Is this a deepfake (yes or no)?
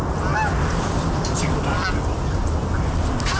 no